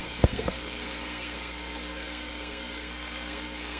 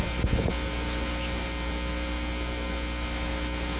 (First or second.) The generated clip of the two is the first